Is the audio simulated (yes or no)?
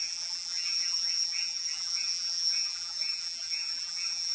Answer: yes